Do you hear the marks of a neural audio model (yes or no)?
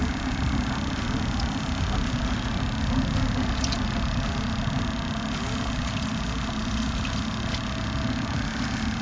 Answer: no